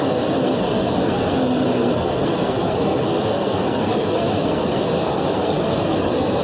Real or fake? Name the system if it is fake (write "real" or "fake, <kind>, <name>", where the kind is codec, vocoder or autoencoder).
fake, codec, SNAC